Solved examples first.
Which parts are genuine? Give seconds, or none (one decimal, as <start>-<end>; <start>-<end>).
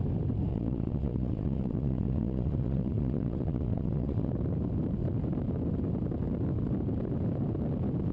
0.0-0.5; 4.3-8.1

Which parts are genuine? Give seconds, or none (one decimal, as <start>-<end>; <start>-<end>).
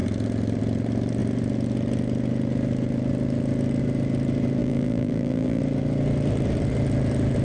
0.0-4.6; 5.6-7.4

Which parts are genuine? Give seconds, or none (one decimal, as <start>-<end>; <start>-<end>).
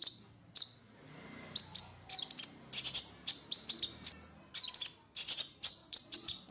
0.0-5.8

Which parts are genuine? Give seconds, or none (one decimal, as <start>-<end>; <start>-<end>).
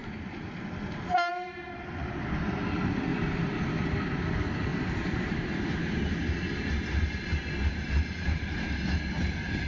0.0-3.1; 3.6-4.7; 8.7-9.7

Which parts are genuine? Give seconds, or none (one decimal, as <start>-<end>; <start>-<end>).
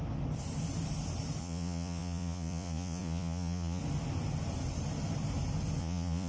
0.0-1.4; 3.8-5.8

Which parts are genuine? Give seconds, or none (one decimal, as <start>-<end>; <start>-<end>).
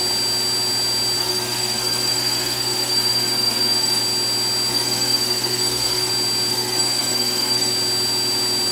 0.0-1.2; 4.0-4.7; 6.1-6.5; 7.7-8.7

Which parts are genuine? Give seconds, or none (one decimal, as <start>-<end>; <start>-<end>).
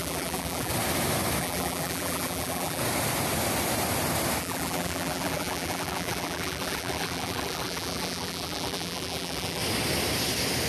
0.7-1.4; 2.8-4.4; 9.6-10.7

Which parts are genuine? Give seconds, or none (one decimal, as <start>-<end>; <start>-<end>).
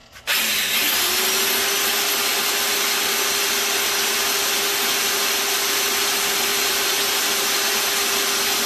0.0-8.7